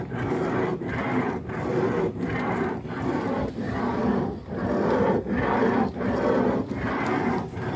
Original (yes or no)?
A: yes